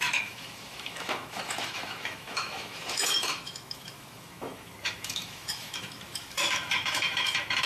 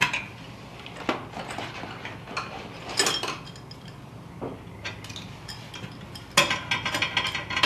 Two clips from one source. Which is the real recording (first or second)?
second